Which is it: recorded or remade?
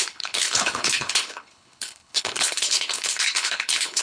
remade